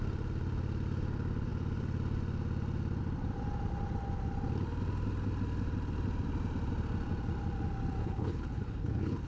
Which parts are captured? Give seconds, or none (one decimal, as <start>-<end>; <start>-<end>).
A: 0.0-8.0